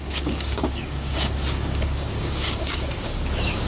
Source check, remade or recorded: remade